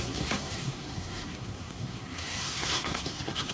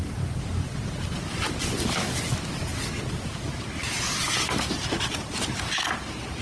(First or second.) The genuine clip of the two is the second